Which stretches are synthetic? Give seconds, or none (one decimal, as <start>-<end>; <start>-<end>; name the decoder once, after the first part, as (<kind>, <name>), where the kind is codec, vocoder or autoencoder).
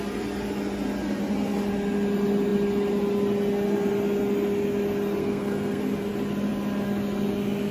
5.2-5.8 (codec, SNAC)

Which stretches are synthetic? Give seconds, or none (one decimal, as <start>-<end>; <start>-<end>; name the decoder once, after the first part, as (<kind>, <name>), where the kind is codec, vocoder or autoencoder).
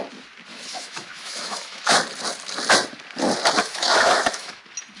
0.5-2.0 (autoencoder, DAC-VAE); 3.6-4.6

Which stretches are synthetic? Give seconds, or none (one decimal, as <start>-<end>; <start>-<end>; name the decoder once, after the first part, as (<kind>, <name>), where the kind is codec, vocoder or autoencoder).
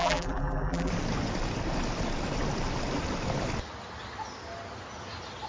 0.0-0.9 (vocoder, BigVGAN v2)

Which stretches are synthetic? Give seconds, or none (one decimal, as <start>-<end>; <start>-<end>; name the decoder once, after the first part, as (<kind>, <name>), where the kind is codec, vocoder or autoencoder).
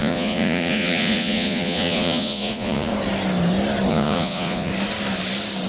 0.0-2.9 (vocoder, Vocos); 3.9-4.7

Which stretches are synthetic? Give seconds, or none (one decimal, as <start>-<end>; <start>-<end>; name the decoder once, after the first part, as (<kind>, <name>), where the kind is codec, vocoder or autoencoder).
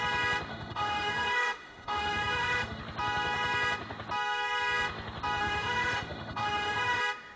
0.5-2.8 (autoencoder, DAC-VAE); 5.4-7.0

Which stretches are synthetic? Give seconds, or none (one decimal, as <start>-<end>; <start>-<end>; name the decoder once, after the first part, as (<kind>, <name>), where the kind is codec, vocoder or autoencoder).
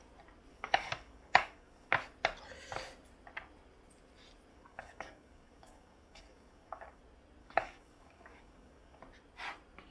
0.5-1.9 (codec, DAC); 4.5-7.0; 7.4-9.0